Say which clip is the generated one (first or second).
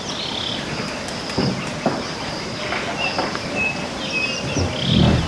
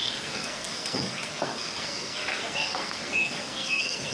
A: second